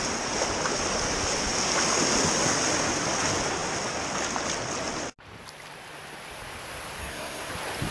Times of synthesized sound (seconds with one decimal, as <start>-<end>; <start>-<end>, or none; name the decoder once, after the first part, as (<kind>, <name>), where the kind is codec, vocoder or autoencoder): 7.0-7.5 (codec, SNAC)